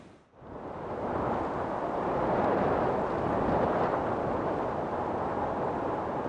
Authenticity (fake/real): real